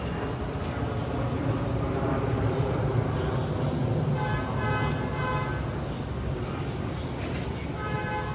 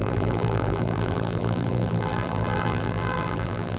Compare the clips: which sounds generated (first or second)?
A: second